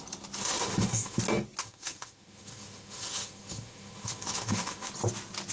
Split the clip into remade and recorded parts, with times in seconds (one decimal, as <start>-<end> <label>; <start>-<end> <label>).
0.0-0.4 recorded; 0.4-1.2 remade; 1.2-1.6 recorded; 1.6-4.9 remade; 4.9-5.5 recorded